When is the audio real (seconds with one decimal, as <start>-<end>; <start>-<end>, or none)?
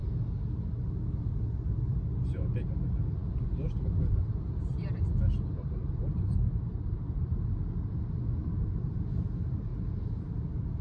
0.0-1.1; 7.6-8.5